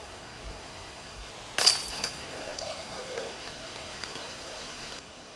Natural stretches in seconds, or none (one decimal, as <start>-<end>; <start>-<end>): 1.3-1.9